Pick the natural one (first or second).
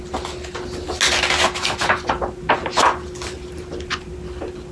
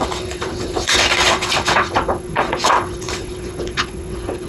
first